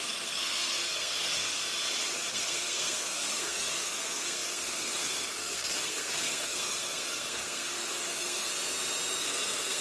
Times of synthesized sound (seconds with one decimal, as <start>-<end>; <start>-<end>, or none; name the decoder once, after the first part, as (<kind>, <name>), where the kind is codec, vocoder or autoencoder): 0.0-1.6 (codec, SNAC); 2.3-8.5; 9.2-9.8